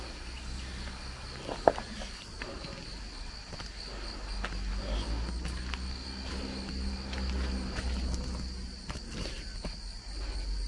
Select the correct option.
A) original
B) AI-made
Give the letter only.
A